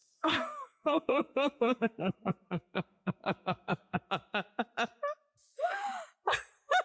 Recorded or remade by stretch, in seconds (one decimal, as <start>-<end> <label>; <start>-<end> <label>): 0.0-4.1 remade; 4.1-6.8 recorded